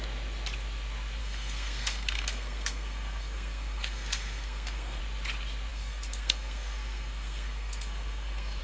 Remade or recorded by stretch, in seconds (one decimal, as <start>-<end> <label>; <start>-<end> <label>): 0.0-1.2 recorded; 1.2-5.0 remade; 5.0-5.7 recorded; 5.7-8.6 remade